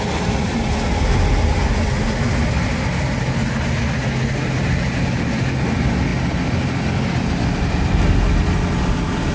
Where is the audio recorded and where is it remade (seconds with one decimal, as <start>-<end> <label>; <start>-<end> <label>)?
0.0-9.3 recorded